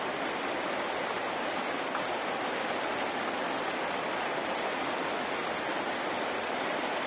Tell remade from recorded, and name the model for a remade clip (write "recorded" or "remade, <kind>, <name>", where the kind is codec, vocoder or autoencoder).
recorded